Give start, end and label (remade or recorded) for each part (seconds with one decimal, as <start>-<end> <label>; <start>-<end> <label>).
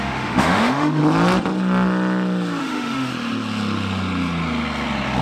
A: 0.0-1.0 remade; 1.0-2.6 recorded; 2.6-3.1 remade; 3.1-5.2 recorded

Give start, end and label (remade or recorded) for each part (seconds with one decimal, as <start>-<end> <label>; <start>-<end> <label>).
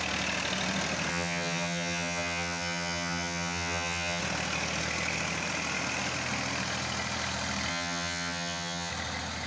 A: 0.0-1.1 recorded; 1.1-4.2 remade; 4.2-7.7 recorded; 7.7-8.9 remade; 8.9-9.5 recorded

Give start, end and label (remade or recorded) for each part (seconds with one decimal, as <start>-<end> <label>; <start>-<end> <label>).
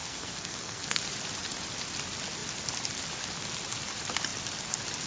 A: 0.0-1.0 remade; 1.0-5.1 recorded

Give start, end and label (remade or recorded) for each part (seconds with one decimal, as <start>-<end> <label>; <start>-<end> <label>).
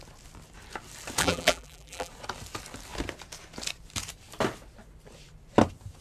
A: 0.0-1.2 recorded; 1.2-2.1 remade; 2.1-6.0 recorded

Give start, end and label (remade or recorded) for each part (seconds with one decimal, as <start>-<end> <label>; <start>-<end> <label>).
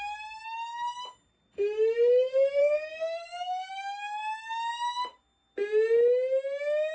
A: 0.0-2.6 recorded; 2.6-3.7 remade; 3.7-6.9 recorded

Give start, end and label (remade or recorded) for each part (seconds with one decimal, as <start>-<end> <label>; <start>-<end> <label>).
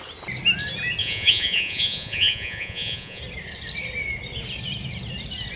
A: 0.0-1.0 recorded; 1.0-3.2 remade; 3.2-5.6 recorded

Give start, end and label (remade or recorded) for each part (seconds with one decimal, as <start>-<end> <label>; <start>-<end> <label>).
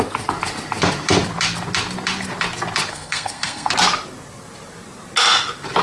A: 0.0-2.9 recorded; 2.9-3.7 remade; 3.7-5.8 recorded